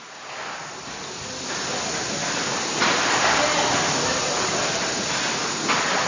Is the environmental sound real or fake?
real